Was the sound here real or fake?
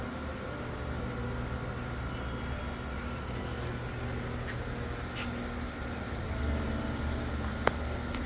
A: real